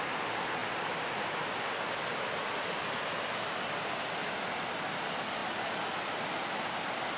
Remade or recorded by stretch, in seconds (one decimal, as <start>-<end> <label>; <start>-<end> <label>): 0.0-7.2 recorded